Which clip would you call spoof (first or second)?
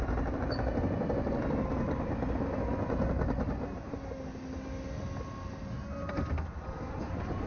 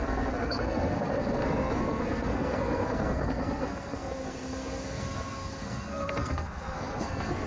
second